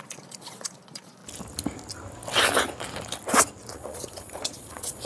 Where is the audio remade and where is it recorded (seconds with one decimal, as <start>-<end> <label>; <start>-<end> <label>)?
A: 0.0-1.2 remade; 1.2-3.7 recorded; 3.7-5.1 remade